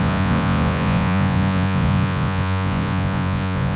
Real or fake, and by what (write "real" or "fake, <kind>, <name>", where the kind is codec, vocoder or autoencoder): fake, vocoder, Vocos